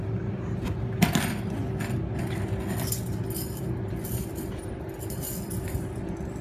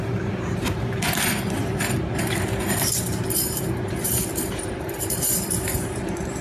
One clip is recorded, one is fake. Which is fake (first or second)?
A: second